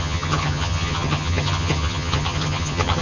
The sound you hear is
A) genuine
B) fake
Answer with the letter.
B